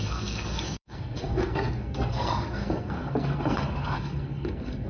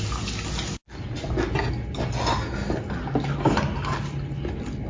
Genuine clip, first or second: second